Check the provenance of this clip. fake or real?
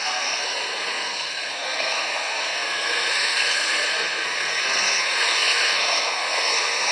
fake